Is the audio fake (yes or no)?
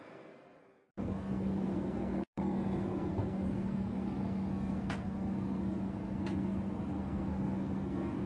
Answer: yes